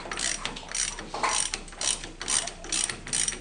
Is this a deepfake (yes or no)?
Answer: no